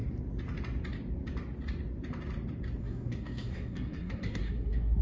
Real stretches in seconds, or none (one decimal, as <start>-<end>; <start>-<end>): 0.0-2.8